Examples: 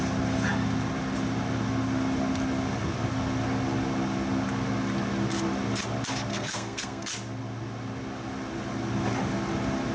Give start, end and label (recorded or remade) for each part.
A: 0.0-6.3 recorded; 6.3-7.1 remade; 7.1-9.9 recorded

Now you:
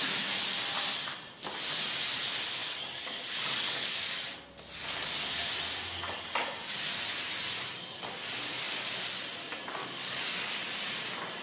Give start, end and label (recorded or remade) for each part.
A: 0.0-2.6 recorded; 2.6-4.1 remade; 4.1-4.8 recorded; 4.8-5.3 remade; 5.3-9.8 recorded; 9.8-10.7 remade; 10.7-11.4 recorded

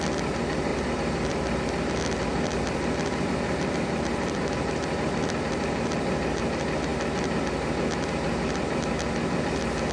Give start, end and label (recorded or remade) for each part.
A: 0.0-0.7 recorded; 0.7-1.6 remade; 1.6-2.3 recorded; 2.3-6.4 remade; 6.4-9.9 recorded